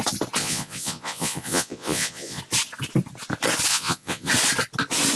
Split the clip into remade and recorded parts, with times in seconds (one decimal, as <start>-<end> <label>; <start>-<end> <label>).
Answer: 0.0-0.4 recorded; 0.4-2.4 remade; 2.4-3.7 recorded; 3.7-4.3 remade; 4.3-5.2 recorded